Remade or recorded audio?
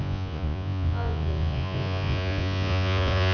remade